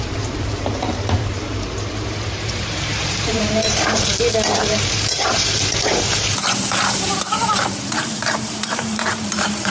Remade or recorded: remade